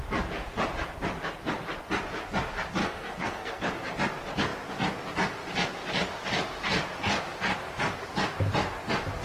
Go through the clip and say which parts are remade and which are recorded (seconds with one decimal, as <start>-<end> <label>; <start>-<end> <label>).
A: 0.0-2.8 recorded; 2.8-3.7 remade; 3.7-9.2 recorded